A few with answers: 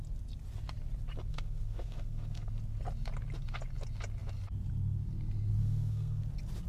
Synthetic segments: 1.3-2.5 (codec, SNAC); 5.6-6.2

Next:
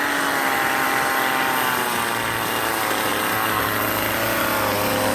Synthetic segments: none

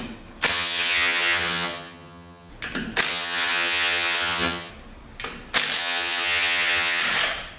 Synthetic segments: 0.5-2.5 (vocoder, HiFi-GAN); 3.1-4.7; 5.8-7.0

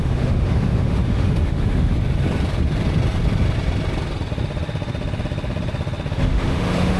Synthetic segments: 0.0-1.9 (autoencoder, DAC-VAE); 6.1-7.0

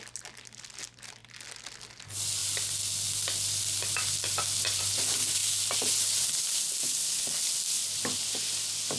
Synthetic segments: none

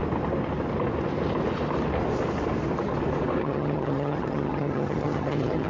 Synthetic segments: 3.4-5.7 (vocoder, HiFi-GAN)

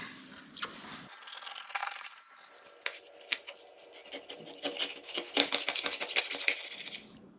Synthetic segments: 1.8-2.3 (vocoder, BigVGAN v2)

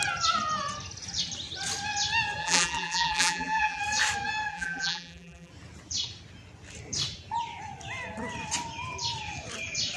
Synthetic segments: 2.4-3.8 (vocoder, BigVGAN v2); 4.5-5.5